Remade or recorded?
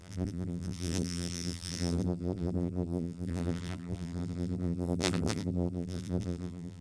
remade